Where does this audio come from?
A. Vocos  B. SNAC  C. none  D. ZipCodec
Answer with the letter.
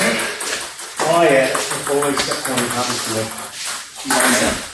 C